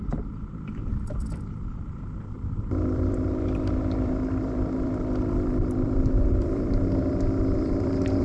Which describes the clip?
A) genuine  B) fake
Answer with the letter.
B